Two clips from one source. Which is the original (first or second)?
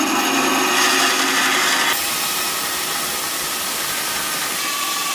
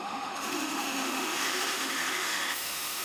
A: first